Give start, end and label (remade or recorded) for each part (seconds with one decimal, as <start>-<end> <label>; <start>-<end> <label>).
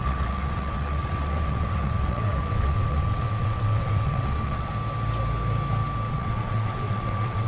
0.0-4.7 remade; 4.7-6.1 recorded; 6.1-7.5 remade